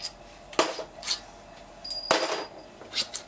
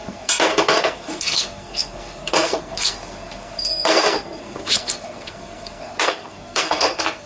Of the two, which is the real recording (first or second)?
first